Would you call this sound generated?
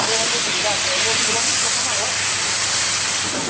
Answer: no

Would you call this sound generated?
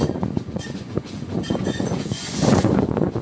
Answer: yes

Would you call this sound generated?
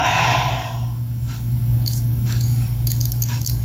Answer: yes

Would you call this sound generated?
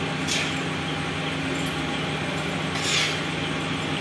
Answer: no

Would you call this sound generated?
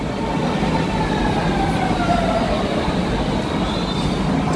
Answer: no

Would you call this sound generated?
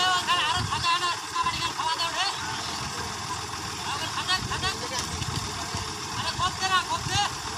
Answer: no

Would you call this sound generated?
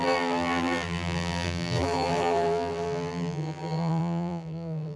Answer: yes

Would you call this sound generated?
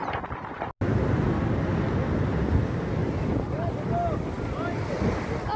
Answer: no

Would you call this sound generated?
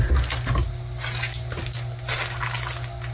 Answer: no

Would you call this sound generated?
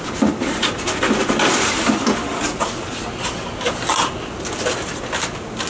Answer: no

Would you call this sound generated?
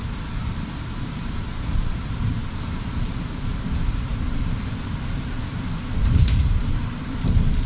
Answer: yes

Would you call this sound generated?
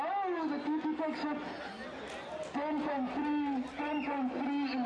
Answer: no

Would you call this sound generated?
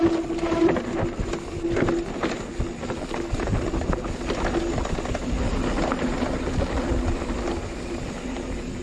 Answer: no